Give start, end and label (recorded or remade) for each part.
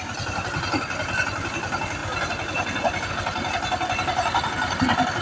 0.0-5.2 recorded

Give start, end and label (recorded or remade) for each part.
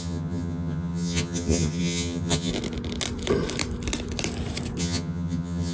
0.0-2.5 remade; 2.5-4.8 recorded; 4.8-5.7 remade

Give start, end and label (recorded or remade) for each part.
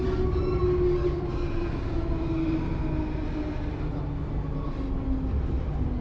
0.0-6.0 recorded